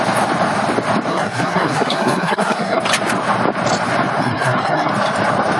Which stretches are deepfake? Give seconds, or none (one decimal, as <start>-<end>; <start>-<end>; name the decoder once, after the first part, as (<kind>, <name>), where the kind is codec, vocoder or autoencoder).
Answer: 1.1-2.8 (codec, SNAC); 4.2-4.9